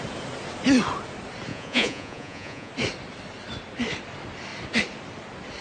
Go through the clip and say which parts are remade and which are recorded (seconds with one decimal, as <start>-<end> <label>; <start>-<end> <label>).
0.0-1.5 recorded; 1.5-2.7 remade; 2.7-5.6 recorded